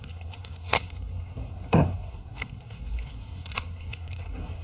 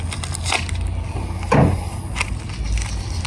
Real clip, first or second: second